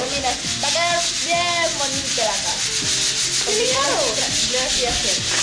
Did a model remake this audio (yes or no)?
no